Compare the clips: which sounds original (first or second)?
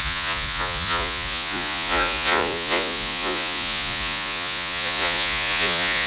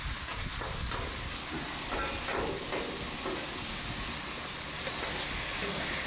second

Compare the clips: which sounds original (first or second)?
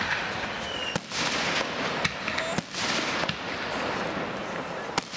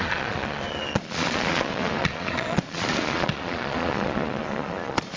first